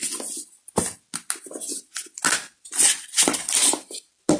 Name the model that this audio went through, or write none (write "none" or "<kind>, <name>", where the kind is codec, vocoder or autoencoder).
none